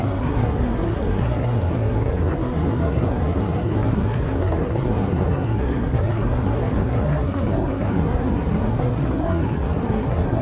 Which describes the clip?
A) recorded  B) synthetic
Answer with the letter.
B